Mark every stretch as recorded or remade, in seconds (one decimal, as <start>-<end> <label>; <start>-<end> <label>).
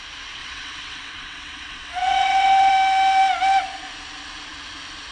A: 0.0-0.4 recorded; 0.4-2.7 remade; 2.7-5.1 recorded